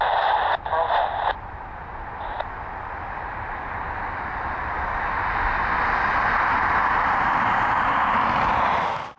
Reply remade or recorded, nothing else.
recorded